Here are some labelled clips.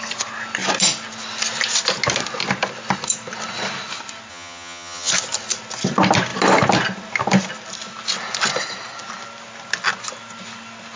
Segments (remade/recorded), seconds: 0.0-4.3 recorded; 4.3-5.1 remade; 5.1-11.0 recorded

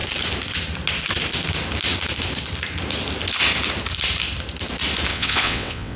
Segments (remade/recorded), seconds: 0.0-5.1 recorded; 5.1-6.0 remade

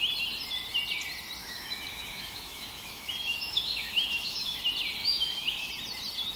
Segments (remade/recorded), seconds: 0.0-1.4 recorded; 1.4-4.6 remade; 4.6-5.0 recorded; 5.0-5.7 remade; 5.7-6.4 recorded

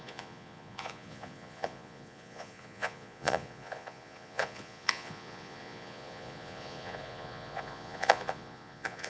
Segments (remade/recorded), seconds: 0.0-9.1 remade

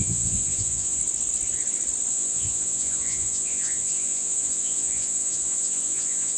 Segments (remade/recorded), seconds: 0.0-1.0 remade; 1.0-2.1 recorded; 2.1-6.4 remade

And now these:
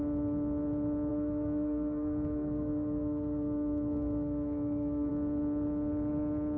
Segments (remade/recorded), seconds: 0.0-1.1 recorded; 1.1-5.1 remade; 5.1-6.6 recorded

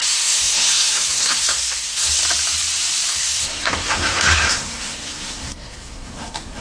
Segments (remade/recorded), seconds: 0.0-2.2 remade; 2.2-3.1 recorded; 3.1-6.6 remade

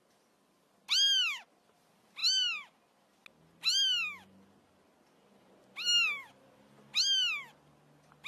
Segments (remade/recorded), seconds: 0.0-8.3 recorded